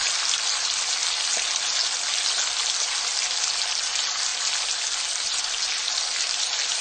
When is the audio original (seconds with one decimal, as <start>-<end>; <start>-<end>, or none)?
0.0-6.8